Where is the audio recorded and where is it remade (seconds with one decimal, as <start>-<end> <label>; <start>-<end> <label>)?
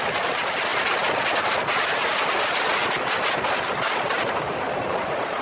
0.0-5.4 recorded